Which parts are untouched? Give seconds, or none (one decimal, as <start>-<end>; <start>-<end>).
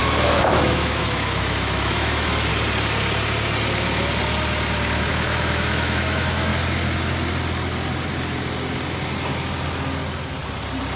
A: 2.5-5.1; 6.5-11.0